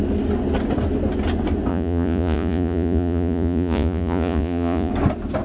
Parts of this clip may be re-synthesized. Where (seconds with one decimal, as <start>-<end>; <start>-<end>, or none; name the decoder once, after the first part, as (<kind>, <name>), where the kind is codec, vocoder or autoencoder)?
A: 1.7-4.9 (vocoder, Vocos)